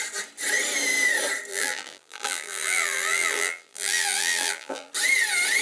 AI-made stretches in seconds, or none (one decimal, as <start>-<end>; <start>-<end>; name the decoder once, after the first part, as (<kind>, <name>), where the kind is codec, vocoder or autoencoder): 1.5-4.9 (vocoder, BigVGAN v2)